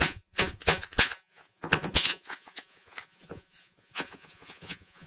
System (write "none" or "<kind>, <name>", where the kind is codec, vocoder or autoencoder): vocoder, Vocos